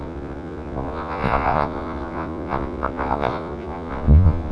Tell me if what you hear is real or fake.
fake